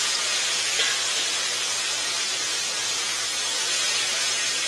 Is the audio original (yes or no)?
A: no